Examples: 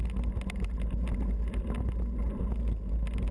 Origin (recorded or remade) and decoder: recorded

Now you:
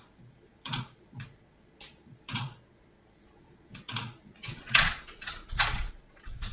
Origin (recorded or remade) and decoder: remade, vocoder, Vocos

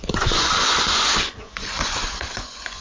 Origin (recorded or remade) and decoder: remade, vocoder, Vocos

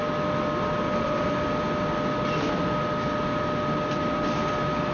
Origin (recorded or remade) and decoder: recorded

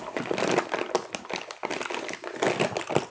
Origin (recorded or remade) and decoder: recorded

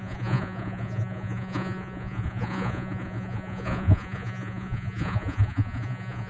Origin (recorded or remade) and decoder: remade, vocoder, Vocos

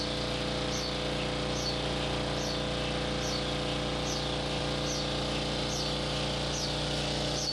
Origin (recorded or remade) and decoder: recorded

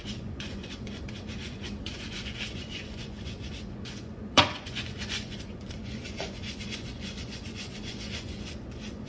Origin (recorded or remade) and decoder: remade, vocoder, Vocos